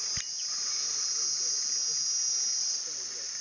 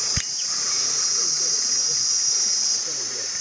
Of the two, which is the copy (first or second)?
second